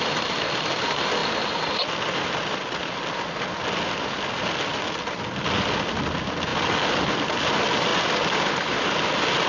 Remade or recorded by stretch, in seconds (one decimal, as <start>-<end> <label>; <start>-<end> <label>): 0.0-9.5 recorded